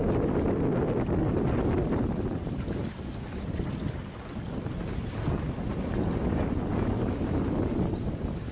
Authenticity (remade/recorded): recorded